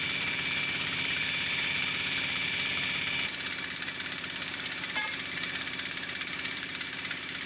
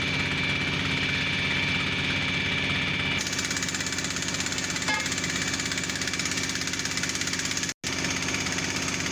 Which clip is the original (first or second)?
second